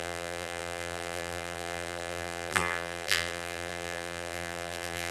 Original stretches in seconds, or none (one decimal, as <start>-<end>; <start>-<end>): none